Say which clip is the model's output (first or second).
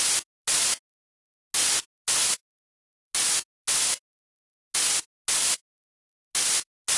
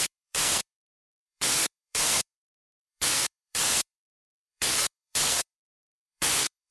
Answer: second